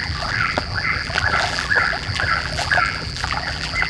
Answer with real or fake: fake